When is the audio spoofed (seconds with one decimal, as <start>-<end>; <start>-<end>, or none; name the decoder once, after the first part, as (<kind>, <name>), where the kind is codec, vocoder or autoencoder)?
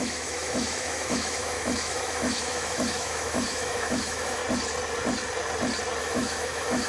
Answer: 0.0-4.4 (autoencoder, DAC-VAE); 6.0-6.9